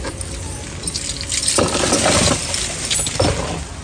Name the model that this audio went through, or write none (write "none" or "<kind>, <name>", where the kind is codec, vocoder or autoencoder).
none